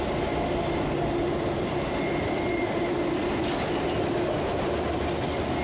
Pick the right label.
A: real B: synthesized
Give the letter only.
A